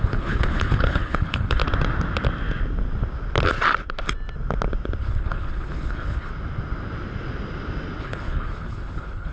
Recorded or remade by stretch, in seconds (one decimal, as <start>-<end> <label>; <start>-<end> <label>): 0.0-1.6 remade; 1.6-5.0 recorded; 5.0-6.3 remade; 6.3-8.0 recorded; 8.0-9.3 remade